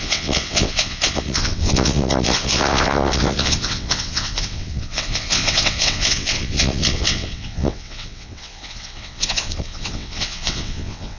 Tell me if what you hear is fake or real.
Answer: fake